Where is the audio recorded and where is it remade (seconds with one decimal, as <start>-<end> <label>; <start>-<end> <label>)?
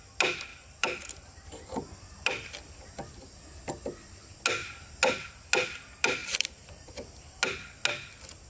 0.0-0.5 recorded; 0.5-1.5 remade; 1.5-4.6 recorded; 4.6-5.3 remade; 5.3-6.2 recorded; 6.2-6.9 remade; 6.9-8.5 recorded